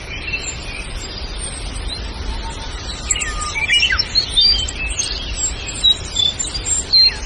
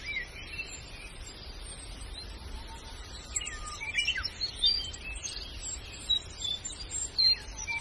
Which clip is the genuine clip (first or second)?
first